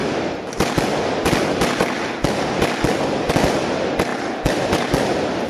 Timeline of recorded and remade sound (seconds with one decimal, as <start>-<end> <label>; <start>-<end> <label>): 0.0-4.1 recorded; 4.1-4.9 remade; 4.9-5.5 recorded